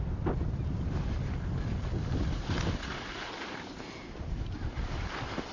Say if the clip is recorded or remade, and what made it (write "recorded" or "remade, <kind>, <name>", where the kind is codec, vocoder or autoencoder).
recorded